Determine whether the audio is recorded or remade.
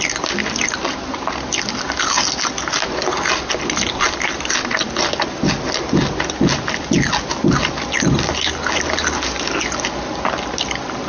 recorded